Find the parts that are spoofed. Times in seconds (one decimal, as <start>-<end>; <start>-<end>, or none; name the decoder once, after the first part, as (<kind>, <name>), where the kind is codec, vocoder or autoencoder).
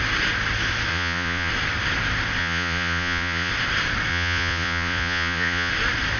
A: 0.9-1.5 (vocoder, Vocos); 2.4-3.5; 4.1-5.7